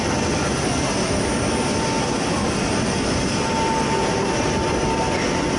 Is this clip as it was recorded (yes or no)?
yes